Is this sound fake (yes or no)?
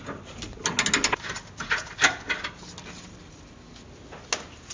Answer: no